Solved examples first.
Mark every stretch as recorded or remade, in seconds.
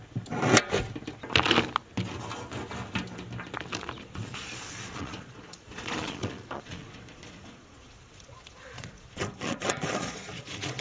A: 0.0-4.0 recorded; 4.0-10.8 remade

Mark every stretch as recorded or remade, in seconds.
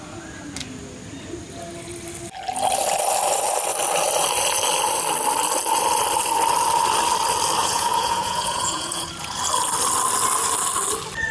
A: 0.0-7.6 recorded; 7.6-9.4 remade; 9.4-11.3 recorded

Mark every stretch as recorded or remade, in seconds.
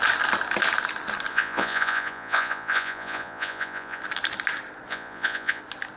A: 0.0-1.3 recorded; 1.3-4.0 remade; 4.0-4.9 recorded; 4.9-5.6 remade; 5.6-6.0 recorded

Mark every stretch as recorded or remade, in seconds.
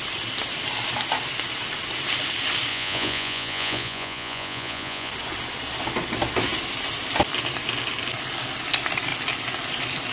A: 0.0-2.7 recorded; 2.7-5.1 remade; 5.1-10.1 recorded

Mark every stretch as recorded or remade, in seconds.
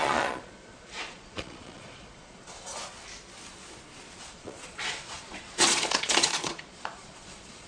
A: 0.0-2.7 remade; 2.7-4.2 recorded; 4.2-7.7 remade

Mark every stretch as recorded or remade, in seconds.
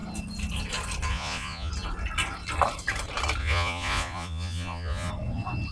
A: 0.0-1.1 recorded; 1.1-1.7 remade; 1.7-3.4 recorded; 3.4-5.1 remade; 5.1-5.7 recorded